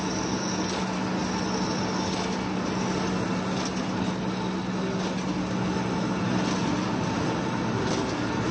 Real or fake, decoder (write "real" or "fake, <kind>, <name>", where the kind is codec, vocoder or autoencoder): real